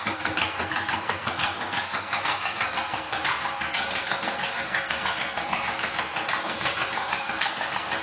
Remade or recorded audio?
remade